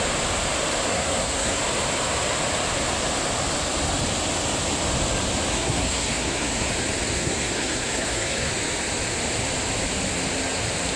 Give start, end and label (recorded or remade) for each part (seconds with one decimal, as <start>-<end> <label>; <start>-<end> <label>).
0.0-0.9 recorded; 0.9-1.6 remade; 1.6-5.5 recorded; 5.5-6.7 remade; 6.7-7.2 recorded; 7.2-8.5 remade; 8.5-11.0 recorded